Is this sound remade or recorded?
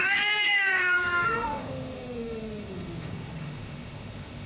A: remade